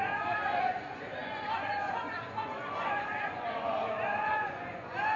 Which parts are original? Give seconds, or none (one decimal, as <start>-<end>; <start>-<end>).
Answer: none